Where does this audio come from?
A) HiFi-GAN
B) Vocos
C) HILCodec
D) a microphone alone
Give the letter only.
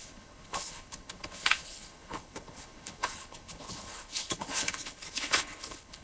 C